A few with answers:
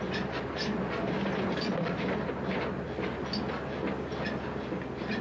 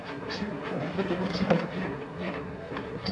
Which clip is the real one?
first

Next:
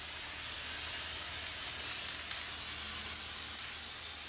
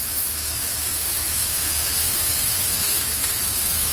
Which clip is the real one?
first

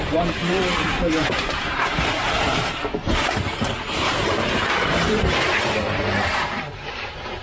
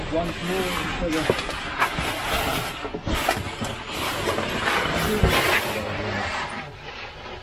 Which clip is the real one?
second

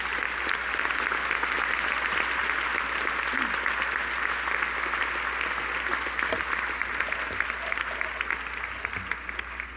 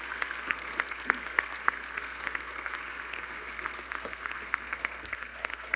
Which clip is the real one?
first